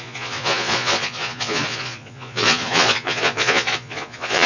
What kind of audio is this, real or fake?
fake